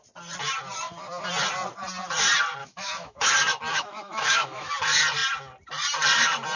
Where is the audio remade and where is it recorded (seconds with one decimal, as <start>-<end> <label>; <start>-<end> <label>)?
0.0-2.6 recorded; 2.6-3.3 remade; 3.3-3.7 recorded; 3.7-4.7 remade; 4.7-6.6 recorded